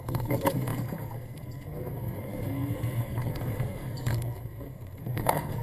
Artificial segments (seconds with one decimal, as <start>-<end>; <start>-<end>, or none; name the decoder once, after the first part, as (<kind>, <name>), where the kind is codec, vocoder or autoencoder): 0.0-5.6 (codec, SNAC)